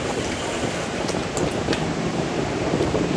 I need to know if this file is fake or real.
real